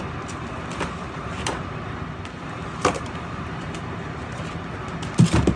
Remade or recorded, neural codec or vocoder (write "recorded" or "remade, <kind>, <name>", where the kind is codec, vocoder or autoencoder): recorded